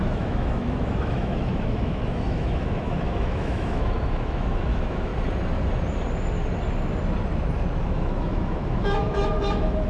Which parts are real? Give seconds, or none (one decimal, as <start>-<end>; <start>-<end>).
5.1-7.8